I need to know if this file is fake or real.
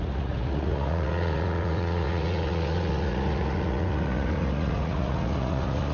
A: fake